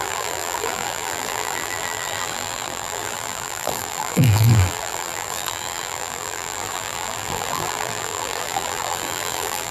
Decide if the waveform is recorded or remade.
remade